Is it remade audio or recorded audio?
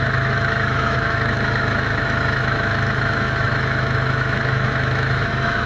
remade